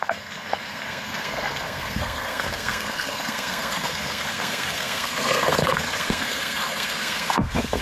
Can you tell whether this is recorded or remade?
remade